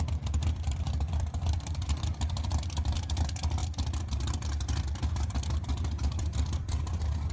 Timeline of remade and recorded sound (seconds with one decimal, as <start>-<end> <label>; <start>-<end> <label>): 0.0-3.6 remade; 3.6-5.1 recorded; 5.1-7.3 remade